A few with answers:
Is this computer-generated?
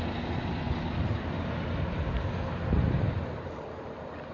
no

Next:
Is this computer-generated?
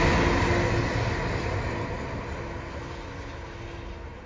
no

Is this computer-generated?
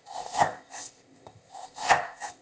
yes